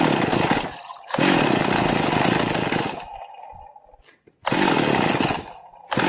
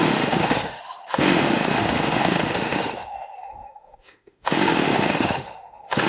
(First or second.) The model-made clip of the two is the second